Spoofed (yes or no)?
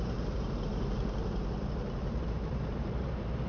yes